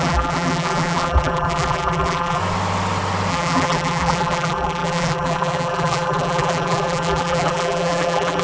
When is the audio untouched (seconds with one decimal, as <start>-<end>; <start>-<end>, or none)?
2.4-3.3